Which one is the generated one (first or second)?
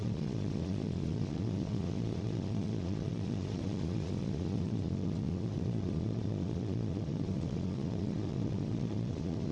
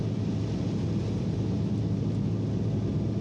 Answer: first